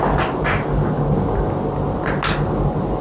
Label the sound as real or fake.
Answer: real